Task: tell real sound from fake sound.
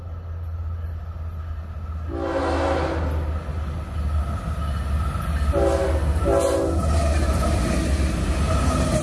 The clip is real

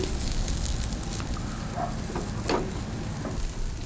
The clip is real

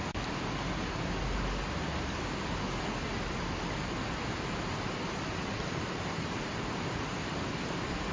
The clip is real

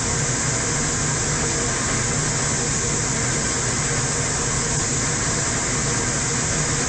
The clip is real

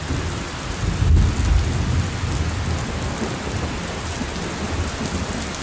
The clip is real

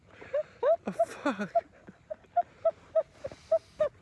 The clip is real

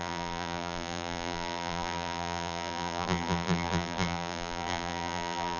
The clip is fake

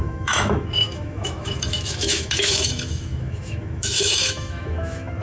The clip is fake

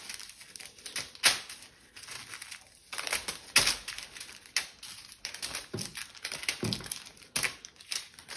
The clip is real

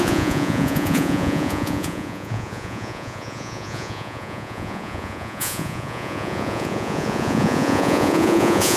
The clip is fake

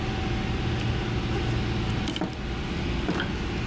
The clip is real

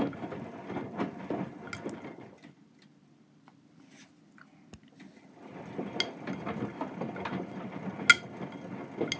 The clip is real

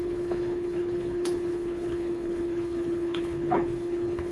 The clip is fake